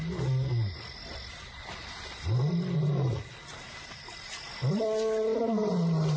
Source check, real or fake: real